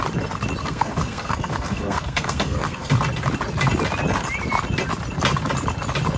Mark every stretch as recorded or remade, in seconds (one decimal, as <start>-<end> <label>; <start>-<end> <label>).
0.0-0.6 recorded; 0.6-2.9 remade; 2.9-6.2 recorded